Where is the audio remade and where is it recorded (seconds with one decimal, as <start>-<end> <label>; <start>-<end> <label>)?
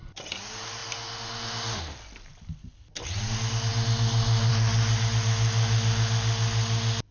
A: 0.0-7.1 recorded